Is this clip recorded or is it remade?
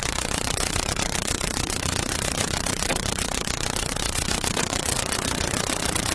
remade